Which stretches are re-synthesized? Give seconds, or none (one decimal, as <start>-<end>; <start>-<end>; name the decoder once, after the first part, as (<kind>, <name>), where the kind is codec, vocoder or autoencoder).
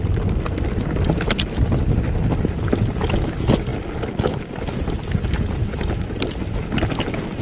none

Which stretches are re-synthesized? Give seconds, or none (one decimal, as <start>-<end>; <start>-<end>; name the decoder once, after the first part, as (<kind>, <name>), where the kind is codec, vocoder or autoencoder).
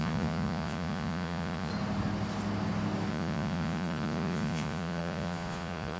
0.0-1.7 (vocoder, Vocos); 3.1-6.0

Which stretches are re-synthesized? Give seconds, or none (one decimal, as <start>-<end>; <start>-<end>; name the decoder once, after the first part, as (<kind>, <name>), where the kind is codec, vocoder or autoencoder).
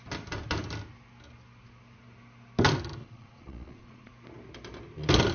3.0-4.1 (vocoder, Vocos)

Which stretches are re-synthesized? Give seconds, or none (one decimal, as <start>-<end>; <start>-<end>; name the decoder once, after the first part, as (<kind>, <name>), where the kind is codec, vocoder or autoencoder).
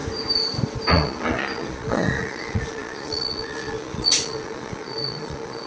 0.9-5.7 (vocoder, Vocos)